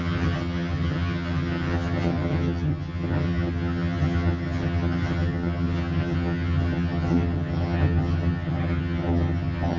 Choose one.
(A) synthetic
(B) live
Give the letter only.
A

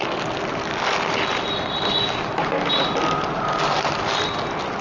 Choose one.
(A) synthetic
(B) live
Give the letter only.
B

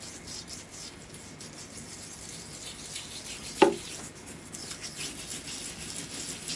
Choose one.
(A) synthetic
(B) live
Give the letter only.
B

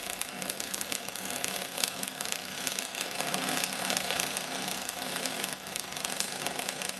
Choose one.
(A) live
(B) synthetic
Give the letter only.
B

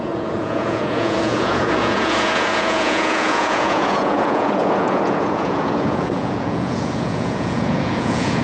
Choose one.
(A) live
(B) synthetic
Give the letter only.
B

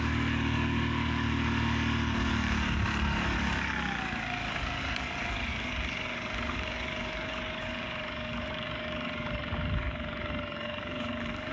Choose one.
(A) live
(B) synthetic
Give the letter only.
B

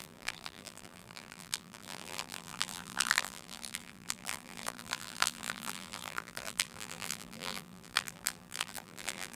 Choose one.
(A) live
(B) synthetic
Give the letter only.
B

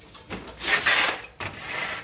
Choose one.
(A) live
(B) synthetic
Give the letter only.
A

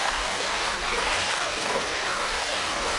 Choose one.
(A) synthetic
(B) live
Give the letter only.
A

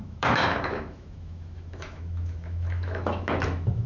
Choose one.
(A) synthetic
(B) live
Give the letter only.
A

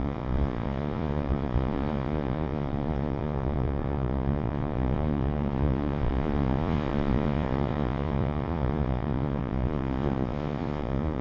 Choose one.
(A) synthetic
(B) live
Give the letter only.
A